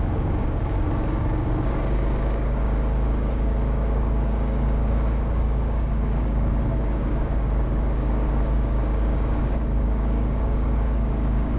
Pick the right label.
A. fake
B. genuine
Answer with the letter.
A